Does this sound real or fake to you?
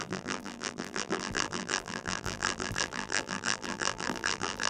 fake